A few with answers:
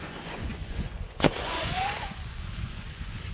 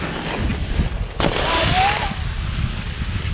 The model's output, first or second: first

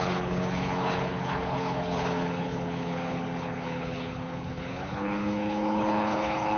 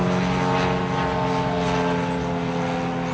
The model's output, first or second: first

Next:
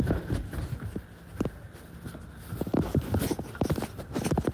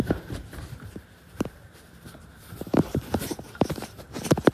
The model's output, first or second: second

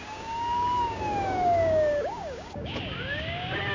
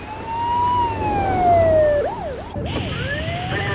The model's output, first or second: first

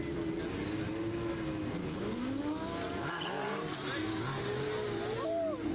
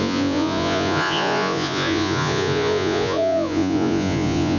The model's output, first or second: second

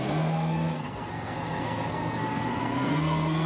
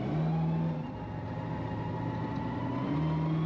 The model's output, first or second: first